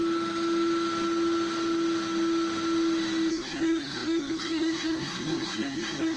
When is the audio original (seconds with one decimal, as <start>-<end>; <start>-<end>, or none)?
0.0-3.3